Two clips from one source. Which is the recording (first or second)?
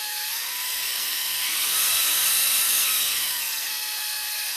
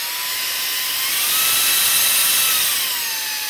second